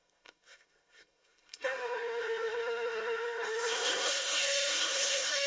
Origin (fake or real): fake